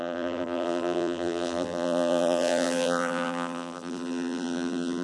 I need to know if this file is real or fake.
fake